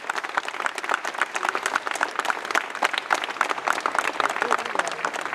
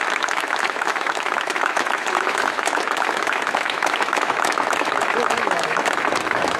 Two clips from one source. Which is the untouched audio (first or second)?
first